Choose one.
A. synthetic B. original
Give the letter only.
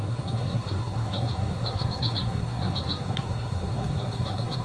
A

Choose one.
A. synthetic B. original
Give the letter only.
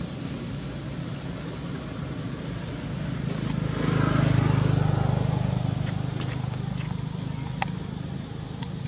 B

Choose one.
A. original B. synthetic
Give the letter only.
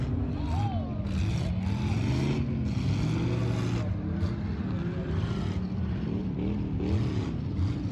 A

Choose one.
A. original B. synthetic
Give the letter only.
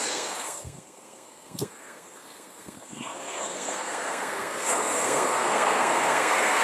B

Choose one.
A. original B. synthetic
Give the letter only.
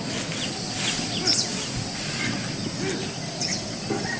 A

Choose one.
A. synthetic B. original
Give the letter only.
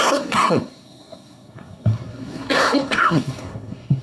A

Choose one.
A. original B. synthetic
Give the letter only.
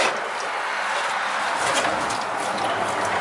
A